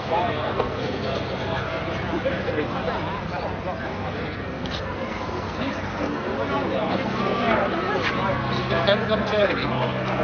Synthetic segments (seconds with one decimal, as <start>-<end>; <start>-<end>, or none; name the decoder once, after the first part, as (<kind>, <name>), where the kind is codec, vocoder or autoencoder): 0.0-1.8 (codec, SNAC); 2.3-2.8; 3.8-6.3; 6.9-7.6; 8.3-10.2